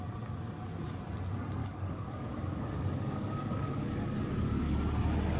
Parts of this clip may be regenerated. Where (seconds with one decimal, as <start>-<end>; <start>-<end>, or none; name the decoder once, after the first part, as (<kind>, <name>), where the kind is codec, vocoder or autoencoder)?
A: 1.6-4.8 (codec, DAC)